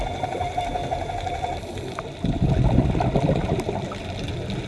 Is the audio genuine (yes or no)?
yes